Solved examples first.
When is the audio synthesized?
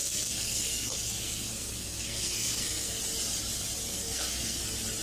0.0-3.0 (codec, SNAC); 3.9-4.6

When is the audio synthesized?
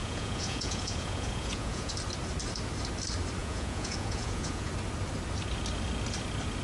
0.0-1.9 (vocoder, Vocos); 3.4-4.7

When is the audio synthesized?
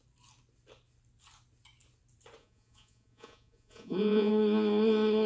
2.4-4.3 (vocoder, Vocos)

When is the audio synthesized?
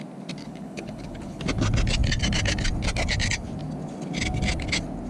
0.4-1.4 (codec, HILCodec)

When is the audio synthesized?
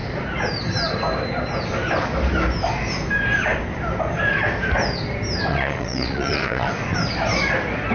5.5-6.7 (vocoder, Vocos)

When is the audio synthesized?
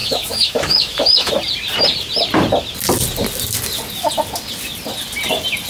0.0-1.3 (autoencoder, DAC-VAE)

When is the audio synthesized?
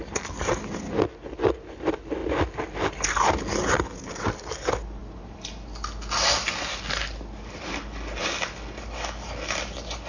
none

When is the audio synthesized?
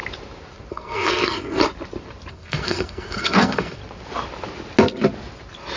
0.7-1.6 (codec, SNAC); 2.3-3.8